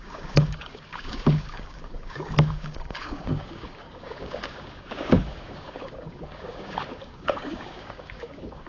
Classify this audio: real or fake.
fake